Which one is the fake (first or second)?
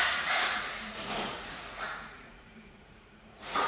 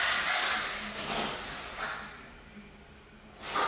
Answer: first